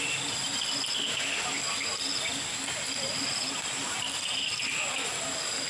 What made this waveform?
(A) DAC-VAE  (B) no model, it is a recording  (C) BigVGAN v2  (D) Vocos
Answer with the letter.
B